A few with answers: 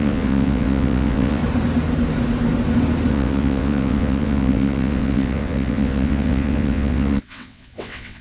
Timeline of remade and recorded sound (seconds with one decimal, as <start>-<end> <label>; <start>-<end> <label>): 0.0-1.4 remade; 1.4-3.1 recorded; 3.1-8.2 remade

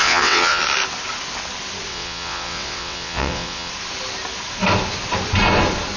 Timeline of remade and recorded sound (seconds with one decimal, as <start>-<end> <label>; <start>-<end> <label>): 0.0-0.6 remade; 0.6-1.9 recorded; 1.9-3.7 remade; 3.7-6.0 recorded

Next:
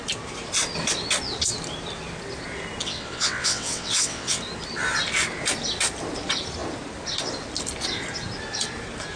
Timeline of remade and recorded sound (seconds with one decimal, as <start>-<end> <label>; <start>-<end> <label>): 0.0-2.8 recorded; 2.8-4.4 remade; 4.4-9.2 recorded